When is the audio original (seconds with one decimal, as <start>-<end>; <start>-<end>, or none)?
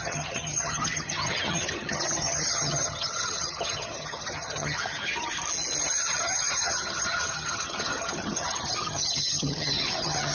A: 5.3-6.2